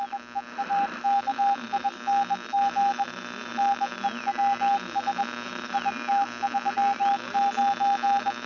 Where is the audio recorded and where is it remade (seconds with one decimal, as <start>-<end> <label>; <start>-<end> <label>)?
0.0-8.5 recorded